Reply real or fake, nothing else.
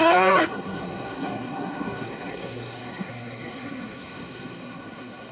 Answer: fake